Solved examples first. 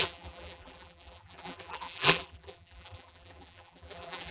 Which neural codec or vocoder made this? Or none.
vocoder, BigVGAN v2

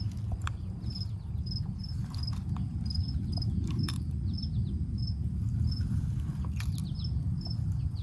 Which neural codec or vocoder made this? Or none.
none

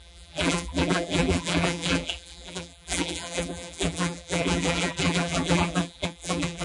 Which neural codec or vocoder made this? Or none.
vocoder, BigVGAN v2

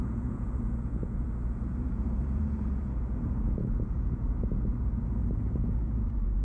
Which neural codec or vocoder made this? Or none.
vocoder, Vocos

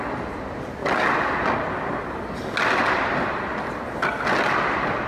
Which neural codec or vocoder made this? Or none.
none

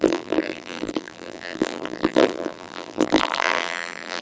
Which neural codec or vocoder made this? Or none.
vocoder, BigVGAN v2